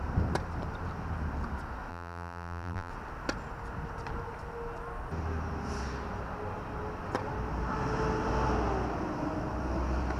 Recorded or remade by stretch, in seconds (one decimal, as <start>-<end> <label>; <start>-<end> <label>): 0.0-1.9 recorded; 1.9-2.9 remade; 2.9-10.2 recorded